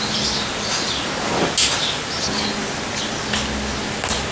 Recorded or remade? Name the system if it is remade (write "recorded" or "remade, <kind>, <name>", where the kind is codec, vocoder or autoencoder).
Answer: recorded